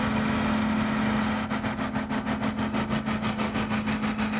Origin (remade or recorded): recorded